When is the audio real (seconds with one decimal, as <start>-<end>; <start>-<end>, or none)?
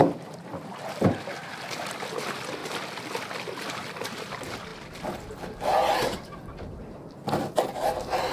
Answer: 0.0-1.4; 2.0-2.6; 4.3-8.3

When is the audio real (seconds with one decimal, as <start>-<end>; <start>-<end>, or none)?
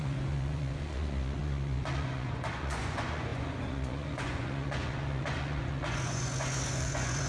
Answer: none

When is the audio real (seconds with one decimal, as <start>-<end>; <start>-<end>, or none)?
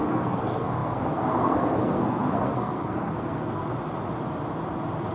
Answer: 3.7-5.1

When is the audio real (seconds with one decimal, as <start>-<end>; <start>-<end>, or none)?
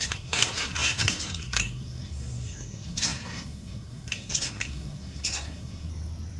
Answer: 5.9-6.4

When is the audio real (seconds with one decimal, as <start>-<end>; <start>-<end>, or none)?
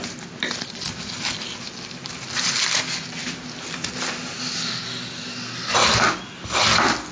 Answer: 0.0-3.2; 3.9-7.1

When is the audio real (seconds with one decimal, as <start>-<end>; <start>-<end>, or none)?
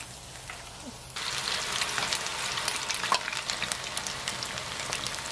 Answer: 0.0-2.3; 3.2-5.3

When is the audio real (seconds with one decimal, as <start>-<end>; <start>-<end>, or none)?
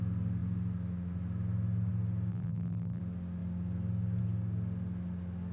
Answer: 0.0-2.3; 3.0-5.5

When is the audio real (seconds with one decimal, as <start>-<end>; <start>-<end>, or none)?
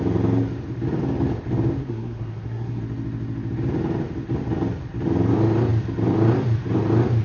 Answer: 0.0-1.8; 2.8-7.2